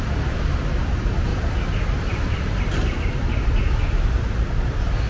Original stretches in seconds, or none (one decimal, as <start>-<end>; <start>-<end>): 0.0-5.1